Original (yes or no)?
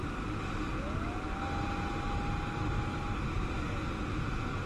yes